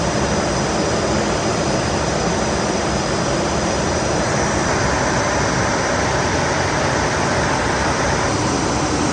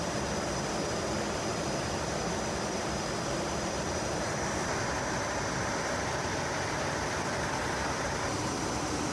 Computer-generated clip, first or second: second